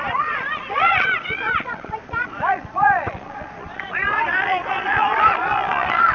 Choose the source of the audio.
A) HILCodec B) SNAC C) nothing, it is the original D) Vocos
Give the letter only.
D